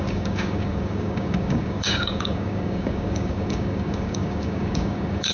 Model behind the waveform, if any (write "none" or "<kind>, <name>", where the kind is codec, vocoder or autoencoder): codec, DAC